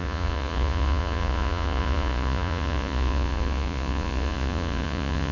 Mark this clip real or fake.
fake